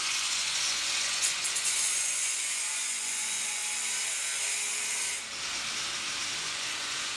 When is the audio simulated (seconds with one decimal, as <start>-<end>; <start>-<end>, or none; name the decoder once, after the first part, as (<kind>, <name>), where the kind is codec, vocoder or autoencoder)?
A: 0.0-3.6 (vocoder, Vocos); 6.4-7.2